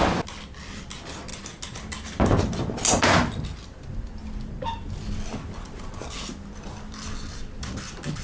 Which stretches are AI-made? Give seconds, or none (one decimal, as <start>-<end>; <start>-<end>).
none